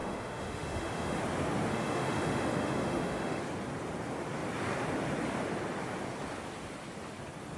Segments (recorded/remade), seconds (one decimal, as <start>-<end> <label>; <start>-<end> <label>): 0.0-1.2 remade; 1.2-1.7 recorded; 1.7-3.4 remade; 3.4-7.6 recorded